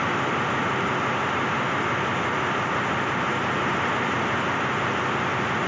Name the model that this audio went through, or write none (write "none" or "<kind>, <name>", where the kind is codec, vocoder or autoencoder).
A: none